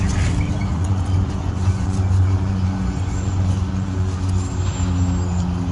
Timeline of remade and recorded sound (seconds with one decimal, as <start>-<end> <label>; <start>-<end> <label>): 0.0-0.7 recorded; 0.7-4.1 remade; 4.1-5.7 recorded